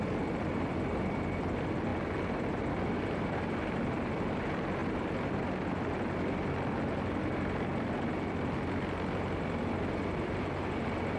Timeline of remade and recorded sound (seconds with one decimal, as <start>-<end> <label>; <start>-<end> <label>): 0.0-11.2 recorded